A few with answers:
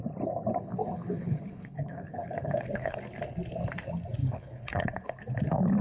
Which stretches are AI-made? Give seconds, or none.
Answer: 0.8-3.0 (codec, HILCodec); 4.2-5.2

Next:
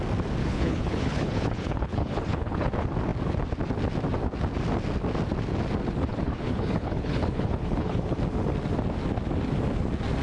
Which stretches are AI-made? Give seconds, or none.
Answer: 0.4-2.7 (codec, HILCodec); 6.1-8.2

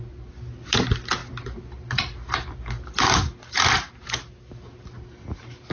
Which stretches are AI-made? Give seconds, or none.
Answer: none

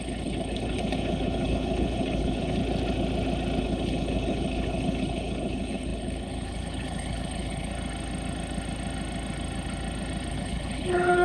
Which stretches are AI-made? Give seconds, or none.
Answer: 0.0-2.6 (codec, HILCodec); 3.6-7.7; 10.3-11.2